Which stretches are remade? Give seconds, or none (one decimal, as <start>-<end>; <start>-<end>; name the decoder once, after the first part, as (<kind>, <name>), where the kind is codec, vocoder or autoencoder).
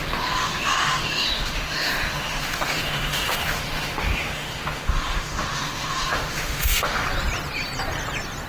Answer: 0.0-7.0 (autoencoder, DAC-VAE)